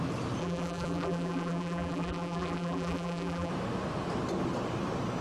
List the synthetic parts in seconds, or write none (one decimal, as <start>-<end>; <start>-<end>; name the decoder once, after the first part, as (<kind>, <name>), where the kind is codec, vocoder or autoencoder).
0.4-3.5 (vocoder, BigVGAN v2)